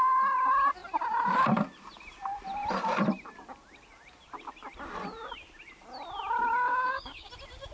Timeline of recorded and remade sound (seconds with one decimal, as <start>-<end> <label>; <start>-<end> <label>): 0.0-6.7 recorded; 6.7-7.3 remade; 7.3-7.7 recorded